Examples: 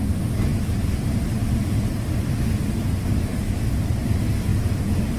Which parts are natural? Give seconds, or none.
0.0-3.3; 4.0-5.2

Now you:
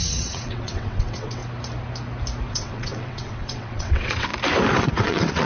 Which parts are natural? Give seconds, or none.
1.4-2.5; 4.3-4.8

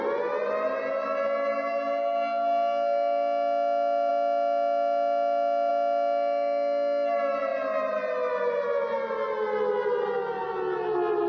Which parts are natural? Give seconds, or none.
0.0-11.3

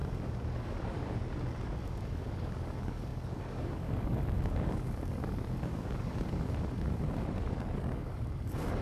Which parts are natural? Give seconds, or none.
none

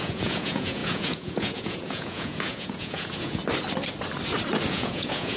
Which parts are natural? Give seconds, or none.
3.4-4.7

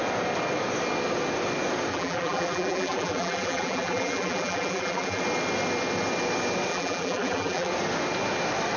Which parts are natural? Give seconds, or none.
0.0-1.9; 5.2-6.7; 7.7-8.8

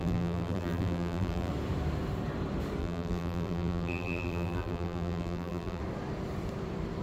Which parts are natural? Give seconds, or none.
1.5-2.8; 5.8-7.0